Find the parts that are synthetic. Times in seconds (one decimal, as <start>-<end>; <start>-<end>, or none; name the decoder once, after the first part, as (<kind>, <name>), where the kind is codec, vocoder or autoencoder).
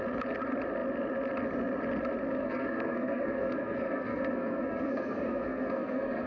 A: 2.4-6.3 (codec, SNAC)